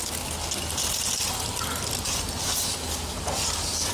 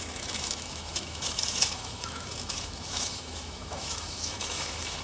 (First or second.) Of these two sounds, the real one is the first